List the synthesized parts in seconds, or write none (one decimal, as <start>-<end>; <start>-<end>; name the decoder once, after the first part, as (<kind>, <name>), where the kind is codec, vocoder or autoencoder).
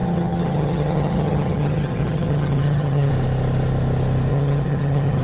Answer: 0.0-3.1 (vocoder, HiFi-GAN); 4.3-5.2